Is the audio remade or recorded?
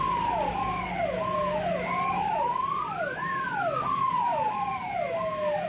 recorded